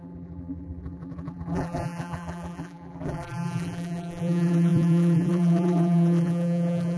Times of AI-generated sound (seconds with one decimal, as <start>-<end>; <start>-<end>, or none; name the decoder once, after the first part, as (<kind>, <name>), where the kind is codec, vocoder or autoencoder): 0.0-7.0 (vocoder, BigVGAN v2)